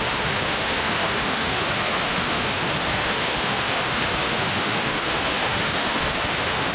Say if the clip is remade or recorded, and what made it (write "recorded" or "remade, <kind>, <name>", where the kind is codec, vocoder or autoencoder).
remade, autoencoder, DAC-VAE